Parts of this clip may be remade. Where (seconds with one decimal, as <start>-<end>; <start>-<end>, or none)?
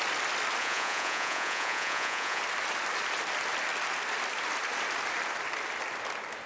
0.6-2.4